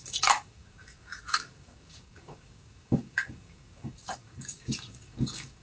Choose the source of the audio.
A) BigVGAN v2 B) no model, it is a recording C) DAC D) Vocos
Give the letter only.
C